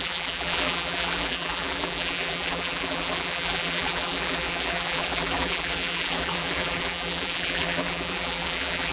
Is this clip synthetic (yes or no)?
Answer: yes